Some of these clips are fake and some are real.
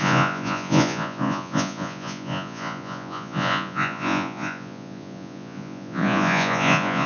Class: fake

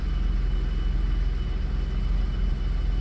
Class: real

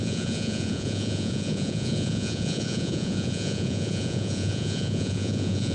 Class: fake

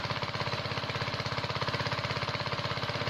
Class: real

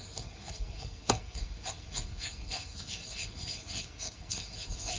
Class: fake